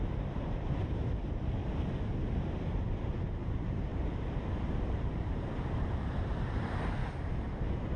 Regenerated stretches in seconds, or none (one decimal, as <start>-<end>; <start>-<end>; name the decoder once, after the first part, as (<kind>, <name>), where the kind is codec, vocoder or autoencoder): 0.0-1.6 (vocoder, BigVGAN v2); 3.4-3.9; 4.5-7.0